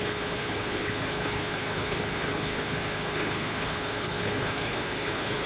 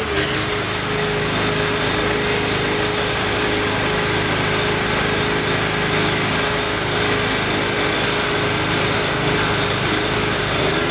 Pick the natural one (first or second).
second